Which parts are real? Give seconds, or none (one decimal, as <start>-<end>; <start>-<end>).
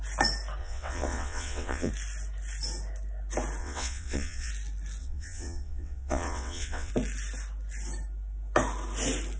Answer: 0.0-0.6; 1.9-3.6; 4.5-5.0; 6.9-9.4